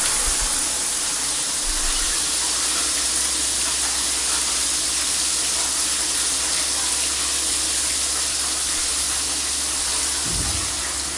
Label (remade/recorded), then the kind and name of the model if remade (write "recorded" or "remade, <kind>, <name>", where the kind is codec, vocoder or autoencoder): recorded